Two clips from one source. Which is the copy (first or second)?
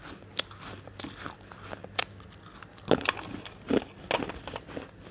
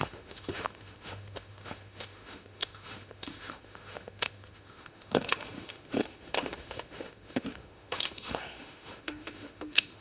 second